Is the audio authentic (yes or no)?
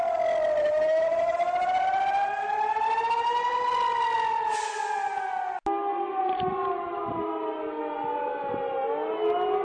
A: yes